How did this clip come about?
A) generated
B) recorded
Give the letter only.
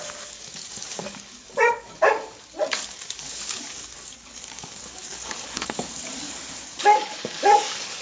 A